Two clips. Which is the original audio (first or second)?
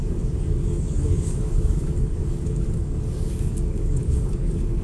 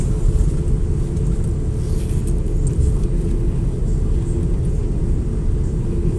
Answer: second